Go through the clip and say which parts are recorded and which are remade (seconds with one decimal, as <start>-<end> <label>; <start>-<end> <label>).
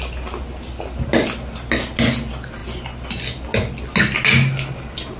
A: 0.0-5.2 recorded